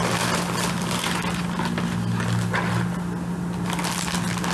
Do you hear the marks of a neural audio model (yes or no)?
no